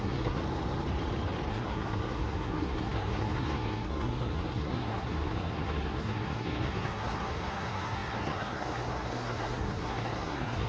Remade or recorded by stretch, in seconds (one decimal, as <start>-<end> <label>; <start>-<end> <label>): 0.0-0.4 remade; 0.4-1.5 recorded; 1.5-10.7 remade